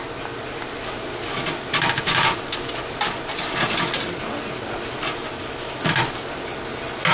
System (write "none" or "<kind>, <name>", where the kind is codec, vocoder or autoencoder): none